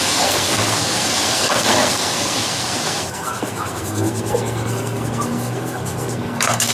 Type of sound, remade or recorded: remade